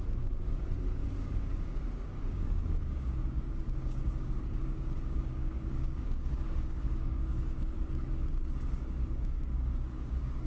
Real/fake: fake